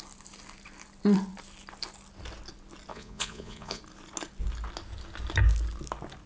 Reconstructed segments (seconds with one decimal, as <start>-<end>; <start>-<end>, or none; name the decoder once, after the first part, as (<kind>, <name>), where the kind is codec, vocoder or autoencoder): 2.9-3.8 (vocoder, Vocos)